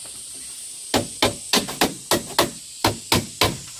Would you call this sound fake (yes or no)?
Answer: no